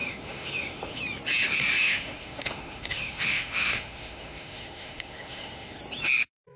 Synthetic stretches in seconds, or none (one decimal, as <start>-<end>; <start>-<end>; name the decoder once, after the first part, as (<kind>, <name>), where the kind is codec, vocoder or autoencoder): 0.0-1.0 (autoencoder, DAC-VAE); 1.8-5.8